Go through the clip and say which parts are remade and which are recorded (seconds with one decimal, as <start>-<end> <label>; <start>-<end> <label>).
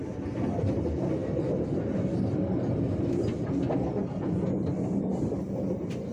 0.0-6.1 recorded